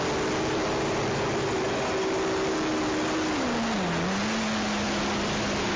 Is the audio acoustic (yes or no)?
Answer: yes